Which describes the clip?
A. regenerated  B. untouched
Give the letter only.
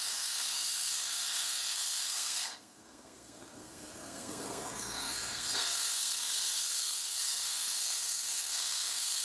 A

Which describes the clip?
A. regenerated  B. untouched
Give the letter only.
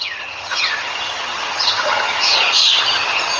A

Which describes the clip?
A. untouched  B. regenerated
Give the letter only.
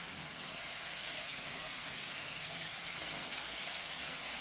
B